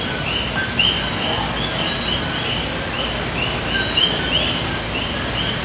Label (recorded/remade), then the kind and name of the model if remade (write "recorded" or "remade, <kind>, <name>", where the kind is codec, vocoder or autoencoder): recorded